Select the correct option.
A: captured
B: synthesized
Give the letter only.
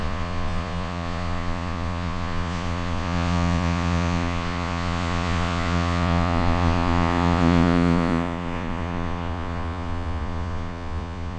B